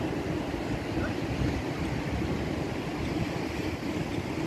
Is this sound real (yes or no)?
yes